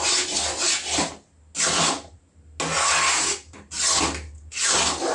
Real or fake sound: real